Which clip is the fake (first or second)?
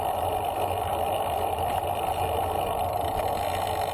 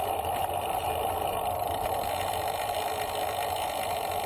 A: second